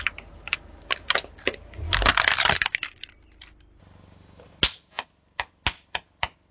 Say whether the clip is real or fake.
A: real